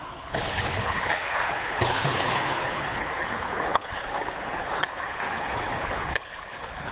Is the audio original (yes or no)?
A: no